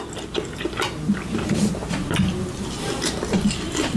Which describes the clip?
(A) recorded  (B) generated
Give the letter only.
A